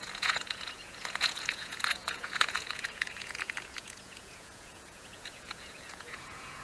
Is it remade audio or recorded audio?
remade